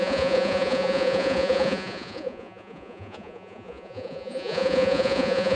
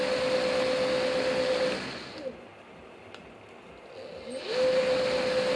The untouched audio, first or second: second